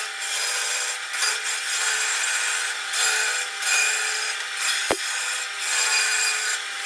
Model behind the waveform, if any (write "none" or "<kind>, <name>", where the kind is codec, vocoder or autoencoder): none